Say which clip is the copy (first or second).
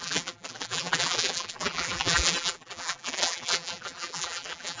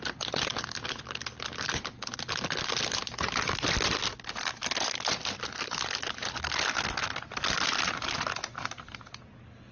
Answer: first